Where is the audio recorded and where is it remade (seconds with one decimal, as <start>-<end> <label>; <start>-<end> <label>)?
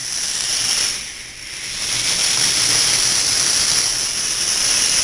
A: 0.0-0.9 remade; 0.9-2.2 recorded; 2.2-3.2 remade; 3.2-5.0 recorded